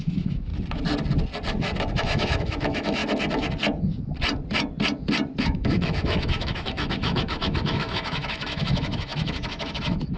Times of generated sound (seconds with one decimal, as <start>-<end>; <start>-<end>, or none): 0.0-0.5; 1.9-3.0; 5.4-10.2